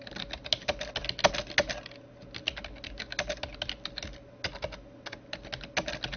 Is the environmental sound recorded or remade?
recorded